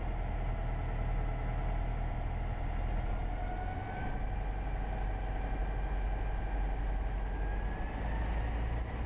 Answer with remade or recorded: recorded